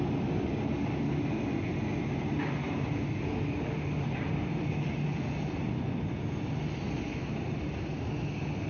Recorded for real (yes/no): yes